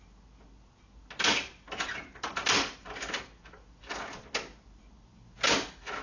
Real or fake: real